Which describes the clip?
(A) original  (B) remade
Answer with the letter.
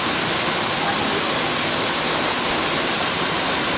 A